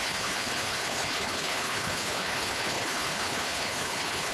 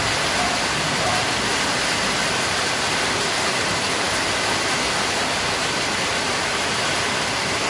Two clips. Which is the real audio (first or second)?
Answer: second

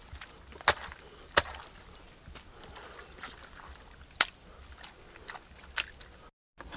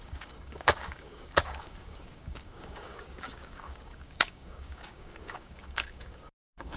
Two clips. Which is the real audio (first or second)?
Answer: first